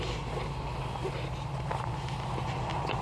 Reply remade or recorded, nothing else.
recorded